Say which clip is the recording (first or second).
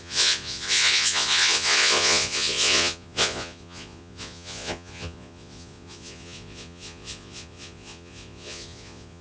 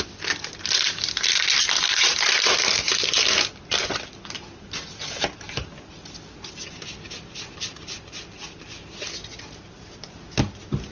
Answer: second